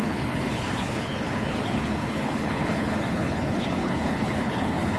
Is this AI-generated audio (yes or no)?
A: yes